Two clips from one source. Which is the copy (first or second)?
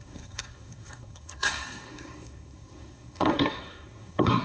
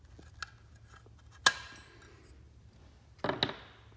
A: first